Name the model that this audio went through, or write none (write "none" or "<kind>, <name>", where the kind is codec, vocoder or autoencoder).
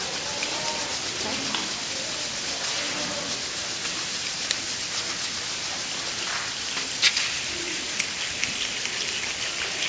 none